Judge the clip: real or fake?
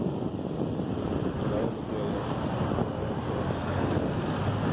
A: real